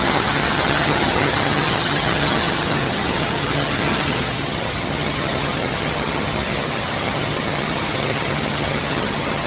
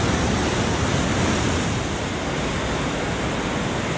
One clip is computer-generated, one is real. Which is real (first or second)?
second